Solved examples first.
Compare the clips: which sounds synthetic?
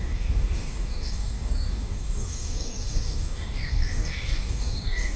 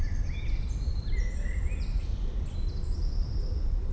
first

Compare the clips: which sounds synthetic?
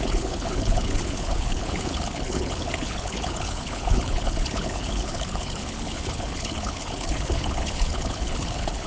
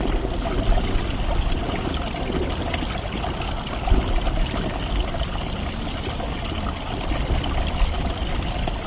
first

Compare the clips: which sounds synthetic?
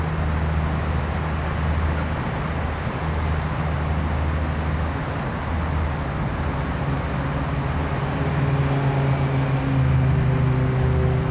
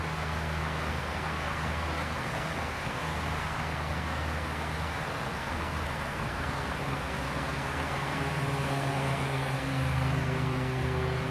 second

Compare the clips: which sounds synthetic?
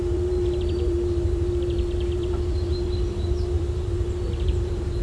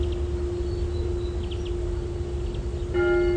first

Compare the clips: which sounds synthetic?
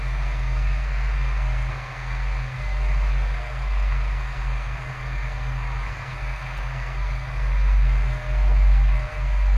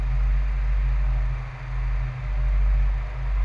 first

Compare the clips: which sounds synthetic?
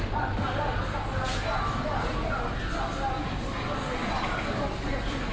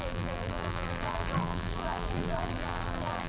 second